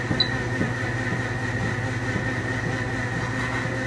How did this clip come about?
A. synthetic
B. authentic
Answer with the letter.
B